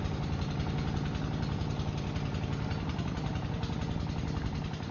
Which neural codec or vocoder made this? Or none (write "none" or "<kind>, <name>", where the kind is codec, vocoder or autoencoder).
none